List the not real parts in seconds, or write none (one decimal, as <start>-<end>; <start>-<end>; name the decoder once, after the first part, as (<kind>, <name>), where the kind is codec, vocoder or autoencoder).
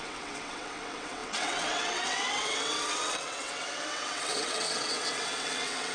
0.0-5.9 (vocoder, WaveNeXt)